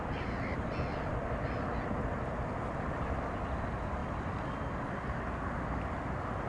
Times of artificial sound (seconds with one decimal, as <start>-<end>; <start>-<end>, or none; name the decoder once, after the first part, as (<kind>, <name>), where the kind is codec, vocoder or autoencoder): none